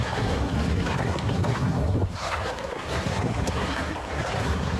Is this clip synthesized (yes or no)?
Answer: yes